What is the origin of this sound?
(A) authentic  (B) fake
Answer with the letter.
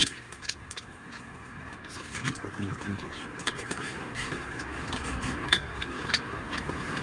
B